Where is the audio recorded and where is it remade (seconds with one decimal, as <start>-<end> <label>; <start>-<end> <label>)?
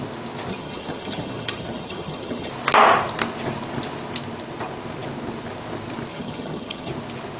0.0-0.5 recorded; 0.5-2.5 remade; 2.5-6.1 recorded; 6.1-6.9 remade; 6.9-7.4 recorded